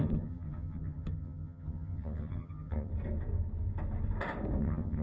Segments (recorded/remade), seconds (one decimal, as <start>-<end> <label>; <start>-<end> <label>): 0.0-2.9 remade; 2.9-4.6 recorded; 4.6-5.0 remade